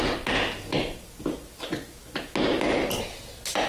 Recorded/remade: recorded